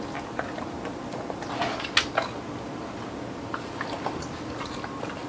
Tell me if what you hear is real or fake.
real